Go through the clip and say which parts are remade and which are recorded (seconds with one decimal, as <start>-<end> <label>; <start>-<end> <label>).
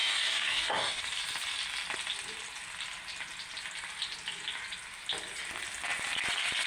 0.0-1.0 remade; 1.0-6.7 recorded